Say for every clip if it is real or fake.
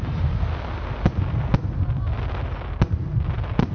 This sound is real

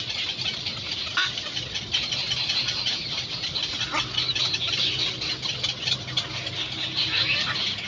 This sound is real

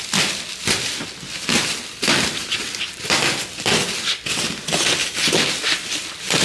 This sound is real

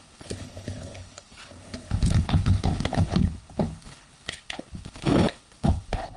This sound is fake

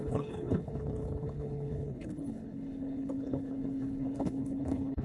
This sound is fake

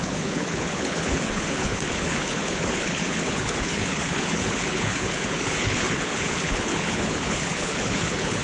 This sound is fake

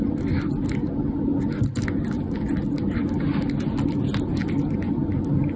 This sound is real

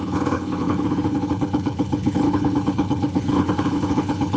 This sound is fake